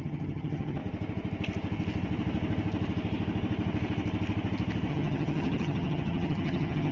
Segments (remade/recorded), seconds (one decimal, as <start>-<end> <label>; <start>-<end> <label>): 0.0-0.8 remade; 0.8-4.9 recorded; 4.9-6.9 remade